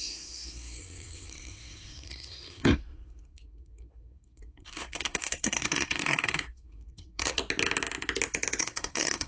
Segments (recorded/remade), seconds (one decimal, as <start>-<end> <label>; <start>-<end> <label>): 0.0-7.4 remade; 7.4-8.6 recorded; 8.6-9.3 remade